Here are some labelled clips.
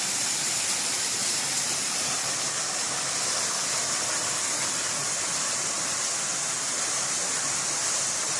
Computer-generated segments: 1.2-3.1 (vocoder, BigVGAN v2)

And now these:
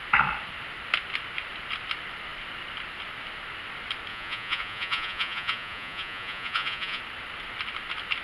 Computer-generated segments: 4.1-7.0 (vocoder, Vocos)

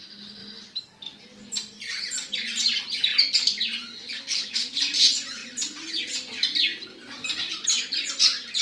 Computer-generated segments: 0.0-0.4 (vocoder, BigVGAN v2); 1.2-5.4; 7.4-8.6

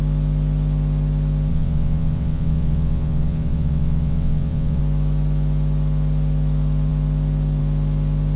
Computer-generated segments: 1.5-4.8 (vocoder, WaveNeXt)

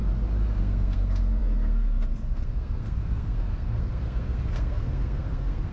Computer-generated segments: 0.6-5.7 (codec, SNAC)

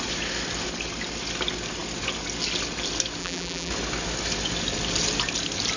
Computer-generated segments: 3.2-3.7 (vocoder, BigVGAN v2)

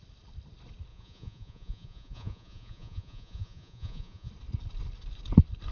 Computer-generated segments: 0.9-4.3 (vocoder, Vocos)